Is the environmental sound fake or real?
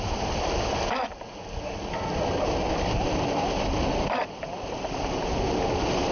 real